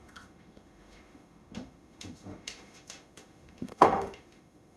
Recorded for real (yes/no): no